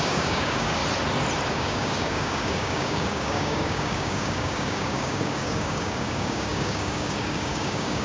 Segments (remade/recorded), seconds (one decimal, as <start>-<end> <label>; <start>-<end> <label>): 0.0-0.8 remade; 0.8-1.5 recorded; 1.5-8.0 remade